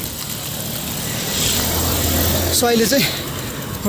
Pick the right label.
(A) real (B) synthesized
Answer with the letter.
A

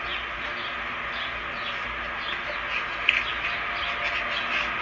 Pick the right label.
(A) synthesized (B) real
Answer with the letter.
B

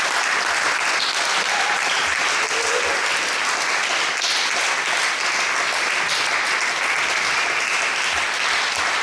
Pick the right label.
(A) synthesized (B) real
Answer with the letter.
B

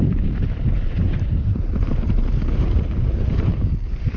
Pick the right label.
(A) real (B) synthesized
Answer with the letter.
B